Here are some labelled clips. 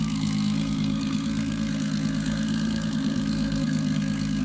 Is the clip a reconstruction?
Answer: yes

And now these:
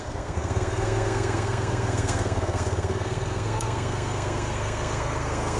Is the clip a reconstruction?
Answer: yes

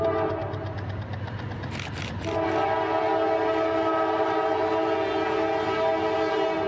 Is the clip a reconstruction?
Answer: no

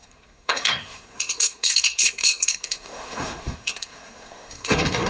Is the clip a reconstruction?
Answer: yes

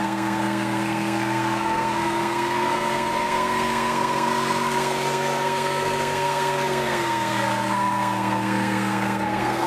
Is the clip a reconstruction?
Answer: yes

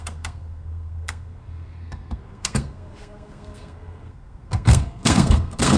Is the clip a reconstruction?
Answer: yes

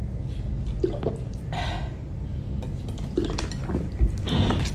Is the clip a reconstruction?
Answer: no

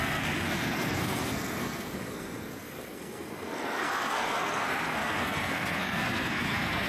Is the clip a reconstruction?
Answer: yes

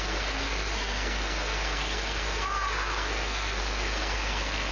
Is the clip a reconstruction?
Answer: yes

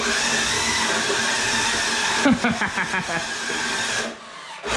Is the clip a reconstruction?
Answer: no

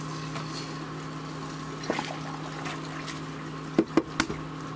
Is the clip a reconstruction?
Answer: no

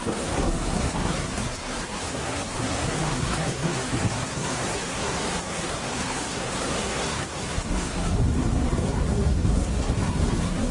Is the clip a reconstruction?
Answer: yes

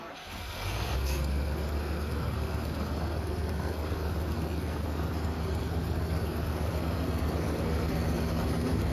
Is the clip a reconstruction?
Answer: yes